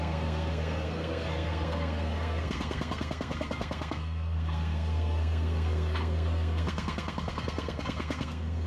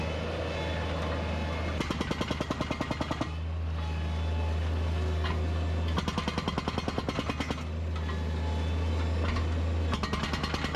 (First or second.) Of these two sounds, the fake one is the first